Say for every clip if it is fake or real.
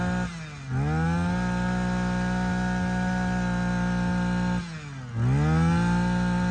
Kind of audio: real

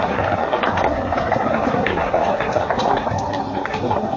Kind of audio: fake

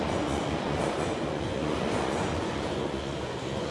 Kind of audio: fake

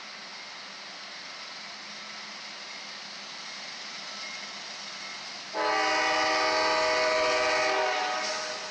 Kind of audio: real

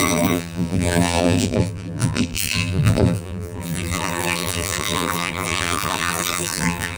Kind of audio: fake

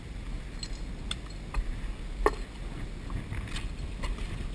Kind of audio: real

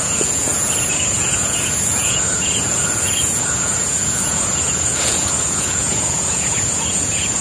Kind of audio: fake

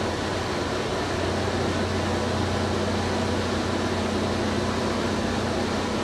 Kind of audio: real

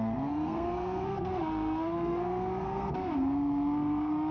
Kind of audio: fake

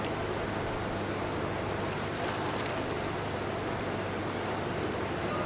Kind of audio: real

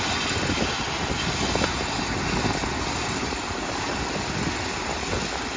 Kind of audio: real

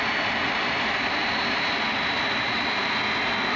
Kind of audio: real